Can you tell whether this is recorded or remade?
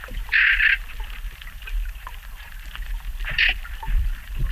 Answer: remade